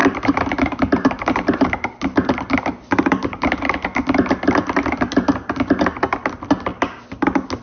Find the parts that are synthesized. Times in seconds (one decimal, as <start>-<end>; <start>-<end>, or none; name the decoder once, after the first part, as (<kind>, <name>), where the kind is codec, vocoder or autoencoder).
0.0-3.5 (vocoder, BigVGAN v2)